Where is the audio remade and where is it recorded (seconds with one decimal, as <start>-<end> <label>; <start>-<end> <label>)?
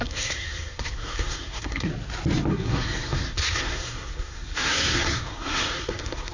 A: 0.0-1.9 remade; 1.9-2.5 recorded; 2.5-6.3 remade